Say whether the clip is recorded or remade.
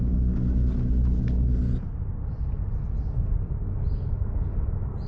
recorded